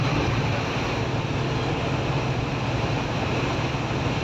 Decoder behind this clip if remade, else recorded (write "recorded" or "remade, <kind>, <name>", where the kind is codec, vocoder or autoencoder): recorded